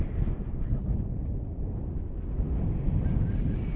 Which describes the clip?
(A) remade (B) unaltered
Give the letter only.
B